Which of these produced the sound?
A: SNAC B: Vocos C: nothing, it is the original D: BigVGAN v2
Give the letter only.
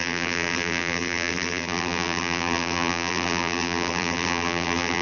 D